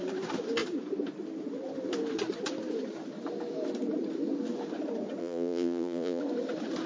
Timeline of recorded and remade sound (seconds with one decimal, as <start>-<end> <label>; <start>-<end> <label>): 0.0-5.2 recorded; 5.2-6.2 remade; 6.2-6.9 recorded